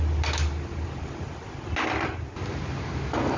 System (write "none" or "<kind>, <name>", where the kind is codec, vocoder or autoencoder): none